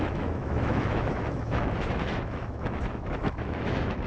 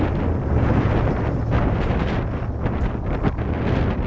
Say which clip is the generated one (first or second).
first